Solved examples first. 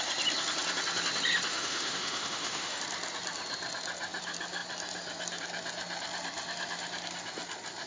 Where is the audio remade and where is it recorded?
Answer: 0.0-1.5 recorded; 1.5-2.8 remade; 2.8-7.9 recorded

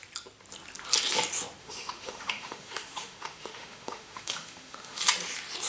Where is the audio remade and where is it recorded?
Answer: 0.0-1.6 recorded; 1.6-5.0 remade; 5.0-5.7 recorded